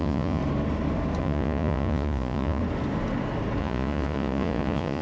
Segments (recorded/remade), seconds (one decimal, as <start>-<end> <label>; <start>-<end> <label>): 0.0-0.4 remade; 0.4-1.2 recorded; 1.2-2.6 remade; 2.6-3.6 recorded; 3.6-5.0 remade